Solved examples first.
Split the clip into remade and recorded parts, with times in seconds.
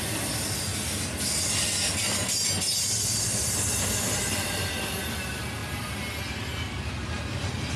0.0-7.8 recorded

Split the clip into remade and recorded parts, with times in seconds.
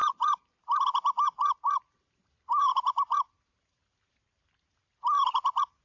0.0-0.5 remade; 0.5-1.4 recorded; 1.4-4.9 remade; 4.9-5.8 recorded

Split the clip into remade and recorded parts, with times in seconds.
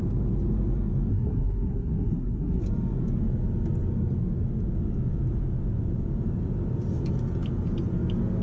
0.0-1.1 recorded; 1.1-2.6 remade; 2.6-8.4 recorded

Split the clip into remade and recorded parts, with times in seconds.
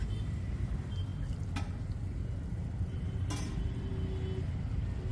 0.0-1.1 remade; 1.1-3.4 recorded; 3.4-3.9 remade; 3.9-5.1 recorded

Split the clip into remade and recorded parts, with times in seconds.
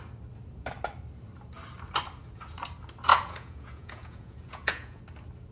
0.0-3.1 recorded; 3.1-5.0 remade; 5.0-5.5 recorded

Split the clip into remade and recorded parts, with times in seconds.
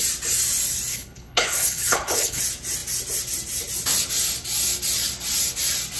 0.0-0.9 recorded; 0.9-2.4 remade; 2.4-6.0 recorded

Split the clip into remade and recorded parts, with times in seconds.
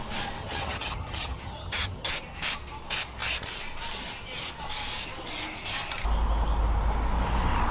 0.0-0.4 recorded; 0.4-2.1 remade; 2.1-7.7 recorded